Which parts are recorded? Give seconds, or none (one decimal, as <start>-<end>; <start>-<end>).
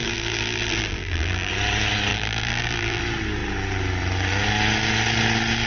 1.5-2.1; 3.0-5.7